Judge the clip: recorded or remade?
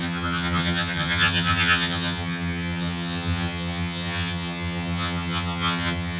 remade